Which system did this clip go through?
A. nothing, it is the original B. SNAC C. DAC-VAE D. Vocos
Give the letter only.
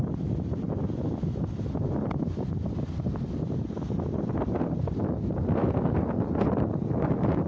A